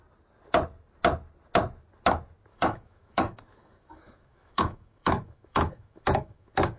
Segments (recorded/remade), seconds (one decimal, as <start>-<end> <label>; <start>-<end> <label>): 0.0-2.5 recorded; 2.5-6.8 remade

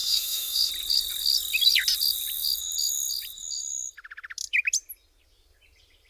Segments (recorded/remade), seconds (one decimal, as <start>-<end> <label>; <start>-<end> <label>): 0.0-0.7 remade; 0.7-6.1 recorded

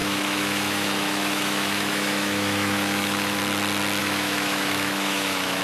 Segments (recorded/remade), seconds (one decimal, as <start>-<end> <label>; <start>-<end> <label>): 0.0-3.4 remade; 3.4-4.0 recorded; 4.0-5.6 remade

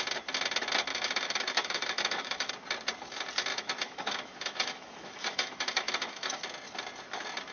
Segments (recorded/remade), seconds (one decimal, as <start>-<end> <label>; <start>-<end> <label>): 0.0-0.9 recorded; 0.9-2.5 remade; 2.5-3.5 recorded; 3.5-6.4 remade; 6.4-7.5 recorded

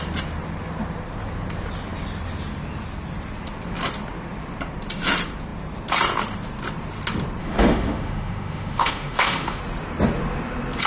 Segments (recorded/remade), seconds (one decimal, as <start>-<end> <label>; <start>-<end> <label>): 0.0-7.4 recorded; 7.4-9.6 remade; 9.6-10.9 recorded

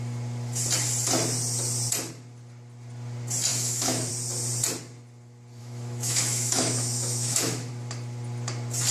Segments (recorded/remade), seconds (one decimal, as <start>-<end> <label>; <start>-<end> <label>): 0.0-3.5 recorded; 3.5-4.1 remade; 4.1-5.6 recorded; 5.6-7.7 remade; 7.7-8.9 recorded